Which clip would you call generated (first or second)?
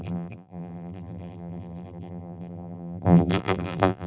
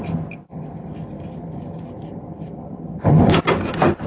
first